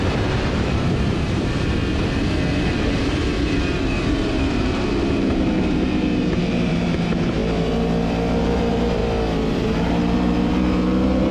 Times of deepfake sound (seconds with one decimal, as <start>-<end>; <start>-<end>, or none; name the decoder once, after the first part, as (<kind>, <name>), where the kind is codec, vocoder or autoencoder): 0.0-1.8 (vocoder, BigVGAN v2); 2.7-7.4; 8.4-9.0; 9.5-11.3